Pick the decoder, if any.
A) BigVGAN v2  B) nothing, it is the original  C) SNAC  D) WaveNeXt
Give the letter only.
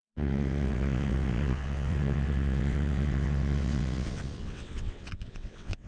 D